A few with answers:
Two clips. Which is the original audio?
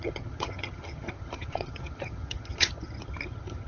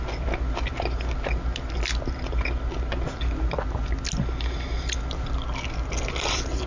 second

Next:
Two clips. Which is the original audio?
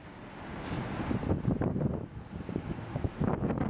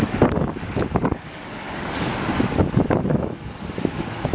first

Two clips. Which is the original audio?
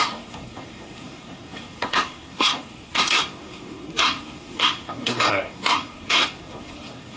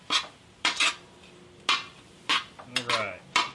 second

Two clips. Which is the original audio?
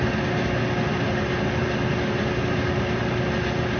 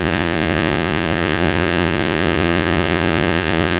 first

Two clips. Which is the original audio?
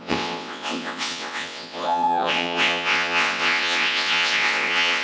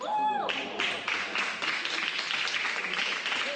second